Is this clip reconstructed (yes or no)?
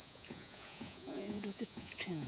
yes